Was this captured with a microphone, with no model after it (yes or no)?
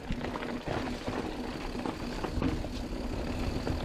yes